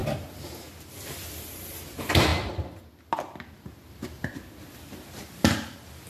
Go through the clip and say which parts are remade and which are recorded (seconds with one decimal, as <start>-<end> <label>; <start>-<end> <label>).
0.0-6.1 recorded